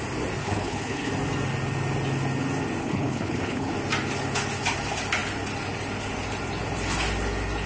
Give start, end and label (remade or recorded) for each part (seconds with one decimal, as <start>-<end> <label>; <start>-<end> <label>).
0.0-0.4 recorded; 0.4-1.1 remade; 1.1-2.8 recorded; 2.8-3.7 remade; 3.7-7.7 recorded